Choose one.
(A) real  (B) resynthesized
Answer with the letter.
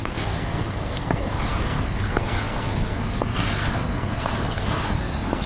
B